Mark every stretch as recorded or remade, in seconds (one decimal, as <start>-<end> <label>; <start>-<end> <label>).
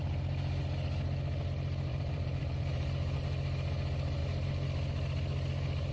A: 0.0-1.9 recorded; 1.9-3.2 remade; 3.2-5.9 recorded